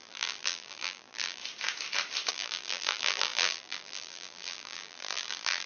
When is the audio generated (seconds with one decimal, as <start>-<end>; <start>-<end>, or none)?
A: 0.0-1.4; 2.3-5.7